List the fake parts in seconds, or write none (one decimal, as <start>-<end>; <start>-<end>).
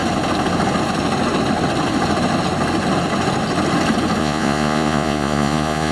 4.2-5.9